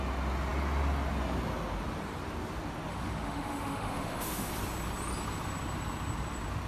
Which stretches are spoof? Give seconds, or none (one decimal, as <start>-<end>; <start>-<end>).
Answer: 2.9-4.5